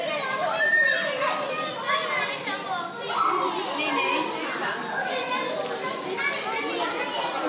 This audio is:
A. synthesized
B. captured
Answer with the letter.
B